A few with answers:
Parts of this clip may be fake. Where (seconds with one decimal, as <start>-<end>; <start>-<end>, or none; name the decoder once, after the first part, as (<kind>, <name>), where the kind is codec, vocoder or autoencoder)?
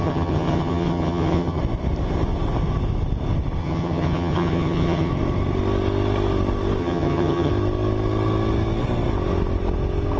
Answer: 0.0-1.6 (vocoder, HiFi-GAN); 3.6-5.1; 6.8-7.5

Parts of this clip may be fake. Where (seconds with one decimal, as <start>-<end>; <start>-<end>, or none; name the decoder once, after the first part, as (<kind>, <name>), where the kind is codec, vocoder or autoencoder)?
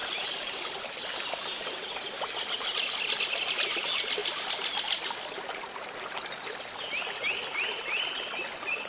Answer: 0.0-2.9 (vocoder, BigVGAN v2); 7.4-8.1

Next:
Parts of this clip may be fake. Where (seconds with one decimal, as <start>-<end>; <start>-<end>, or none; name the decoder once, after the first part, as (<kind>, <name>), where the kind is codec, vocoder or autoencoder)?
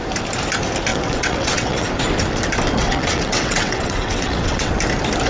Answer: 0.9-1.9 (vocoder, WaveNeXt); 2.8-4.7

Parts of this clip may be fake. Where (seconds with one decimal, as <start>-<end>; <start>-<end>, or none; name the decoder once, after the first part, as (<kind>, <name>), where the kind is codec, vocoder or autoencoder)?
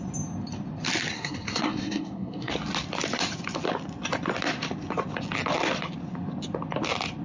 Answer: 1.1-2.5 (codec, SNAC)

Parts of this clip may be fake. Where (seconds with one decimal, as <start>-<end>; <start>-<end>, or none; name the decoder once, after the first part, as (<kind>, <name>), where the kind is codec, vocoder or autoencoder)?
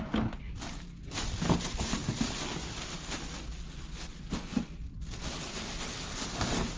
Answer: none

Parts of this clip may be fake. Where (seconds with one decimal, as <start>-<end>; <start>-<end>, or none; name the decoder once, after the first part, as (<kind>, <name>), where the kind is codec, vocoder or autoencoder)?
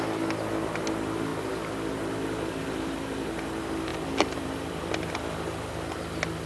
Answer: 3.9-5.1 (vocoder, BigVGAN v2)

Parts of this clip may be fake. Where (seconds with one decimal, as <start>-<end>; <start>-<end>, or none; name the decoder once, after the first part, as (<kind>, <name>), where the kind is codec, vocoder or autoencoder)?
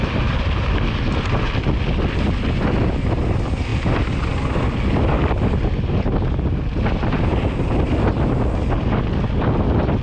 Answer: none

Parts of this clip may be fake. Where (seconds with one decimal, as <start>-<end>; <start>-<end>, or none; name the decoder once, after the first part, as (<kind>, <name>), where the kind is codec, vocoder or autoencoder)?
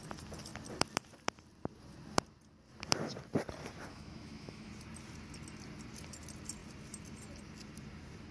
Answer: 3.9-4.7 (autoencoder, DAC-VAE)